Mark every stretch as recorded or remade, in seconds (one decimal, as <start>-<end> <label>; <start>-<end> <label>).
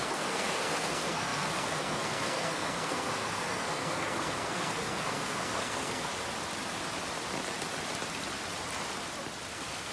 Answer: 0.0-6.1 remade; 6.1-9.5 recorded; 9.5-9.9 remade